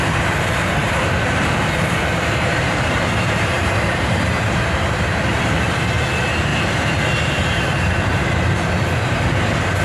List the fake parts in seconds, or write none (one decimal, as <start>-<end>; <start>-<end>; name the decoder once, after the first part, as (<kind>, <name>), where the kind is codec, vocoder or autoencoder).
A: 0.8-5.2 (vocoder, BigVGAN v2); 6.5-8.2